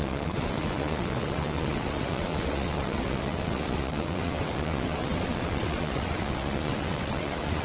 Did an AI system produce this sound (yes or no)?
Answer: yes